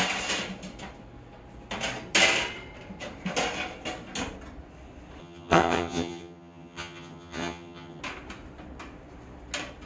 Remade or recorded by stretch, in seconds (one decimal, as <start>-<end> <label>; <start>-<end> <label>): 0.0-5.2 recorded; 5.2-8.0 remade; 8.0-9.9 recorded